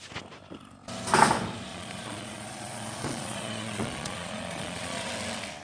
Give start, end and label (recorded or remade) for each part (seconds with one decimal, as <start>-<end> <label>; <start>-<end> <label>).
0.0-1.7 recorded; 1.7-5.1 remade; 5.1-5.6 recorded